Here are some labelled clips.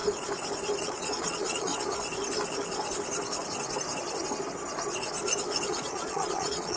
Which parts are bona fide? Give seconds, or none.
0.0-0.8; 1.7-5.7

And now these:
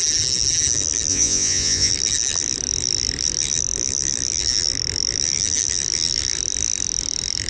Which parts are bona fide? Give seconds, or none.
0.0-1.1; 1.9-7.5

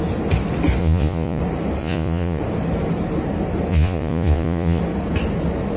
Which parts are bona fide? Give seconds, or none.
0.0-0.8; 1.4-1.8; 2.4-3.7; 4.8-5.8